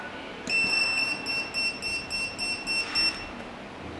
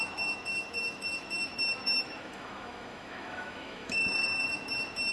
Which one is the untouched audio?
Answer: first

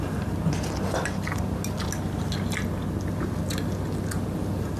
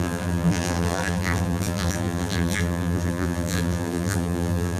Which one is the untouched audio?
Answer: first